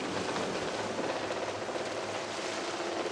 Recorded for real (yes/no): yes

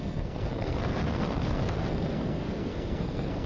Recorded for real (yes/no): no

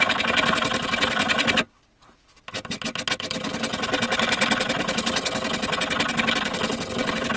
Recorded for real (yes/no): yes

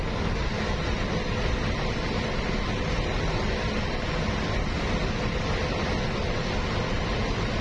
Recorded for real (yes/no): yes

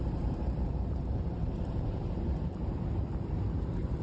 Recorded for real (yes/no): no